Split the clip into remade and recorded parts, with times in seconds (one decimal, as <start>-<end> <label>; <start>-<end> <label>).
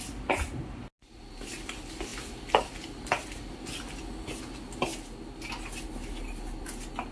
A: 0.0-7.1 recorded